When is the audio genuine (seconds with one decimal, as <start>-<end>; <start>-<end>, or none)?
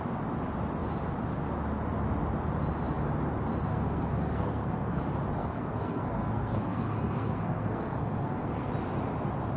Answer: 0.0-3.7; 5.0-5.4; 8.7-9.6